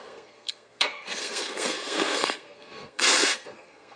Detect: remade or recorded remade